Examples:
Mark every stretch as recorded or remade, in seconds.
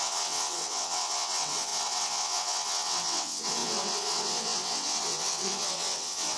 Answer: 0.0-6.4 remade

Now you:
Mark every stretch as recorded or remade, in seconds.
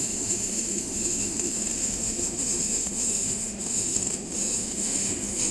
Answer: 0.0-5.5 remade